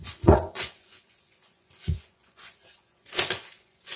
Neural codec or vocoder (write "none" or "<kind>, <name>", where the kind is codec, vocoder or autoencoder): vocoder, Vocos